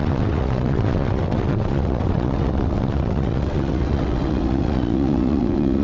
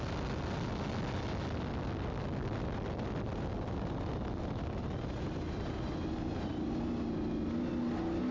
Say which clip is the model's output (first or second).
first